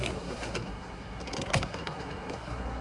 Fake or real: fake